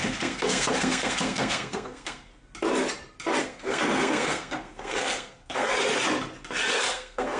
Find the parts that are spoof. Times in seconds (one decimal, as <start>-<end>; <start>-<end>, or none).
0.0-2.3; 3.4-5.7; 6.9-7.4